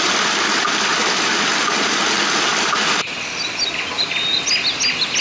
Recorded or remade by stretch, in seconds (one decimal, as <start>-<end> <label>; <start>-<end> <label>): 0.0-5.2 recorded